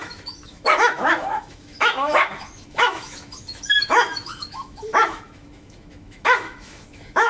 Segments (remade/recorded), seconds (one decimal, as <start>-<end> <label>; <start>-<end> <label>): 0.0-7.3 remade